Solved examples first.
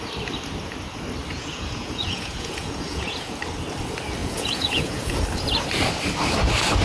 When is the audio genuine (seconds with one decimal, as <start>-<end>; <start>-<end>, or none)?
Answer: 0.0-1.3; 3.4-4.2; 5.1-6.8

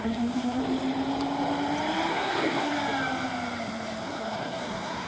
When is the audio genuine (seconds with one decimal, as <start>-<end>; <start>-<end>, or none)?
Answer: 0.6-2.1; 2.7-4.0

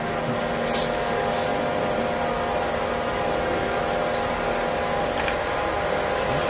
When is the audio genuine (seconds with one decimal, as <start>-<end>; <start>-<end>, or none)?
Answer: 0.0-6.5

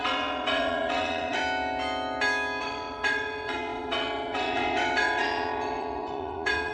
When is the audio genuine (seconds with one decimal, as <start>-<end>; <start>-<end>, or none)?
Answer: 1.4-2.6

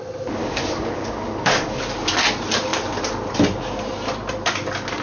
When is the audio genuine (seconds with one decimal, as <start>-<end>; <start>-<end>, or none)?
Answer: 0.0-0.4; 1.8-5.0